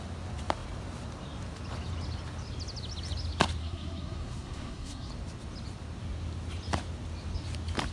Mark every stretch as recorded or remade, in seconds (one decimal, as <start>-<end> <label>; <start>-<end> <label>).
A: 0.0-3.6 recorded; 3.6-5.1 remade; 5.1-7.9 recorded